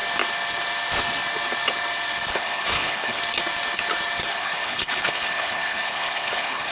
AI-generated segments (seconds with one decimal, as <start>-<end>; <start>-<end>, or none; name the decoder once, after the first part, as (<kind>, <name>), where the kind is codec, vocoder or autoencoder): 2.3-3.2 (codec, HILCodec); 4.3-6.7